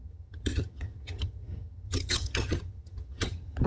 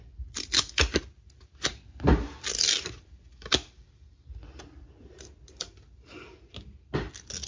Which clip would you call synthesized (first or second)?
first